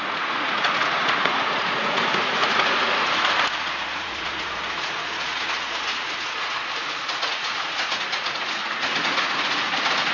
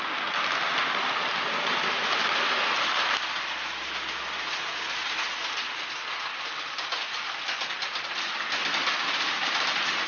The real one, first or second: second